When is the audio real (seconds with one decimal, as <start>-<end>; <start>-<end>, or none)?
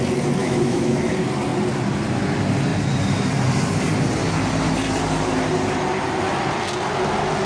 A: 0.0-0.4; 1.1-7.5